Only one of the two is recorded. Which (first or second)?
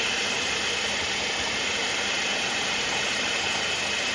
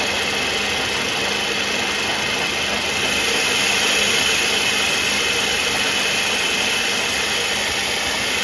second